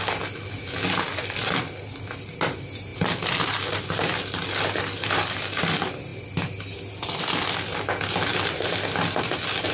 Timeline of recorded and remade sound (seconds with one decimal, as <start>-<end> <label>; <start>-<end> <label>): 0.0-9.7 recorded